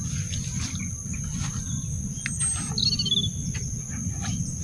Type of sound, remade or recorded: recorded